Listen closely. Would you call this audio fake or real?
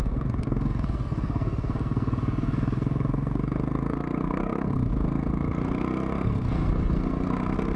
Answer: fake